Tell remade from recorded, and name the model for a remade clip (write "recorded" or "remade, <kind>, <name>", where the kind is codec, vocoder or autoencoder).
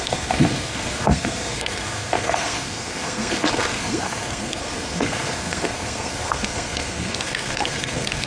remade, codec, SNAC